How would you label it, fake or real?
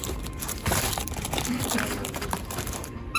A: fake